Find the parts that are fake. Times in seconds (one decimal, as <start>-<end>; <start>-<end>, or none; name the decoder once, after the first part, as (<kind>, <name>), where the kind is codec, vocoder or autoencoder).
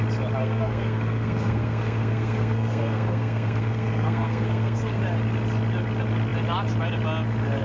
0.4-5.0 (codec, SNAC)